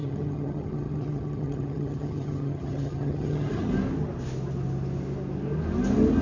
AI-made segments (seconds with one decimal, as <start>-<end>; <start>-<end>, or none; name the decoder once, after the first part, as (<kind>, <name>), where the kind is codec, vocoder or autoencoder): 0.0-3.7 (vocoder, HiFi-GAN)